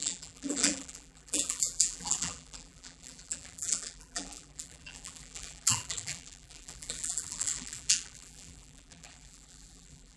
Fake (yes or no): yes